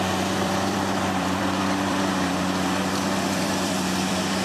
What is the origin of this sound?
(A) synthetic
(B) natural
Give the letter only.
A